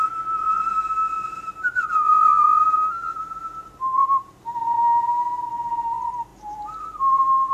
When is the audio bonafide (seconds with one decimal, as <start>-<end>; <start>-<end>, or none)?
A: 0.0-7.5